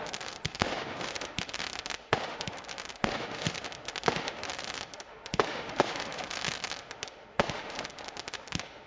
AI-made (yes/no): yes